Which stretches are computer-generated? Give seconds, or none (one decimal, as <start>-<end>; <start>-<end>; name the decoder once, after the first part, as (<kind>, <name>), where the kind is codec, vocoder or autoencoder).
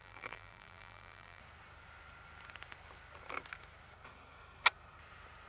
0.0-1.4 (vocoder, BigVGAN v2)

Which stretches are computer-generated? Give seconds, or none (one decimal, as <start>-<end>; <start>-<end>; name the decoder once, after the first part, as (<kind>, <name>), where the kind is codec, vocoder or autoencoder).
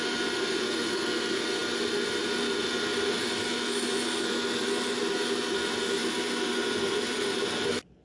none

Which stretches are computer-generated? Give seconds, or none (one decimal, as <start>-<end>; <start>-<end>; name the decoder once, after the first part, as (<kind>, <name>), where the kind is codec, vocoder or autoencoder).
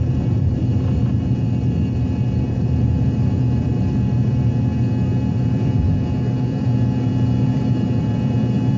0.0-0.6 (vocoder, BigVGAN v2); 2.6-4.7; 5.3-8.8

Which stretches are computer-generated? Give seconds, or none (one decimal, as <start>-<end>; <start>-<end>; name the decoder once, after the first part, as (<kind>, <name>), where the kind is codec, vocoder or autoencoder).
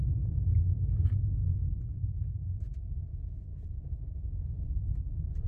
0.0-5.5 (vocoder, BigVGAN v2)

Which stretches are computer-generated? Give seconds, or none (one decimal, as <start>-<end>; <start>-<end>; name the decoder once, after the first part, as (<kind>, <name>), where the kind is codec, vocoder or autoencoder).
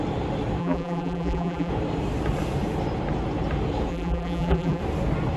0.6-1.7 (vocoder, BigVGAN v2); 3.9-4.8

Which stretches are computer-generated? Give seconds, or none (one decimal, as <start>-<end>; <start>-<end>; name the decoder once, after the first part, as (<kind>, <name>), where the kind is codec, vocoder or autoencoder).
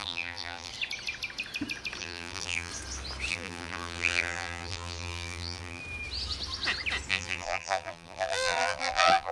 0.0-0.7 (vocoder, BigVGAN v2); 2.0-2.7; 3.3-5.8; 7.1-9.3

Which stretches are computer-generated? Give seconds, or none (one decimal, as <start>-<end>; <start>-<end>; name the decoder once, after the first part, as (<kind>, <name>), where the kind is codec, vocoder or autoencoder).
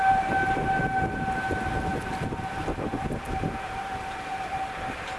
1.9-5.2 (vocoder, BigVGAN v2)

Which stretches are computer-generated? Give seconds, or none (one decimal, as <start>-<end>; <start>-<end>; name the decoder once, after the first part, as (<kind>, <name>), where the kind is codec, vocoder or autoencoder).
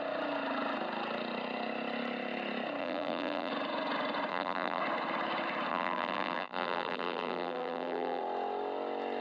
2.8-3.5 (vocoder, BigVGAN v2); 4.3-4.8; 5.7-8.2